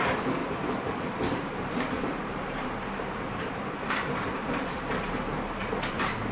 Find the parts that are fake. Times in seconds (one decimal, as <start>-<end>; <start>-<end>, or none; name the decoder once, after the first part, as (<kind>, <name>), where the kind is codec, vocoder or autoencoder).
0.0-0.4 (vocoder, BigVGAN v2); 0.9-6.3